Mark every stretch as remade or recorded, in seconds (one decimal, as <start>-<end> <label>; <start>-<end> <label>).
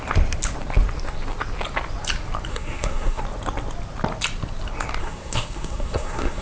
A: 0.0-2.5 recorded; 2.5-3.2 remade; 3.2-5.0 recorded; 5.0-6.4 remade